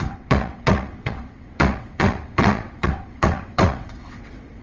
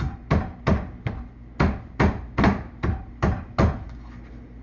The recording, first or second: second